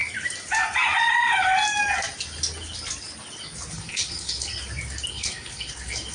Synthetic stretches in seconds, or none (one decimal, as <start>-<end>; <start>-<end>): 3.7-4.5; 5.1-6.1